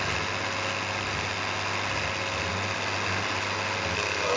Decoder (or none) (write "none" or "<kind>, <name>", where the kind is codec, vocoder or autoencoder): none